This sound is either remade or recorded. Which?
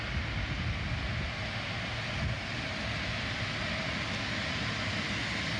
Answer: recorded